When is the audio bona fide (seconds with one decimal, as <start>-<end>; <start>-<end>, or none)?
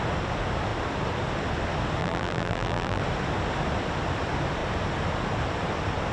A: 0.0-2.0; 3.0-6.1